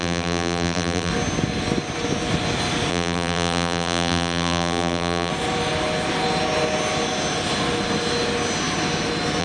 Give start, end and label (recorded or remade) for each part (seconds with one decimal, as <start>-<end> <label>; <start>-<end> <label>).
0.0-1.1 remade; 1.1-2.9 recorded; 2.9-5.3 remade; 5.3-9.4 recorded